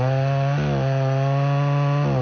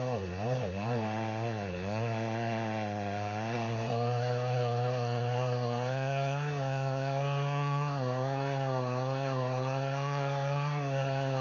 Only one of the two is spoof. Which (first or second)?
second